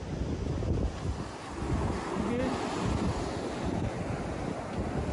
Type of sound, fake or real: real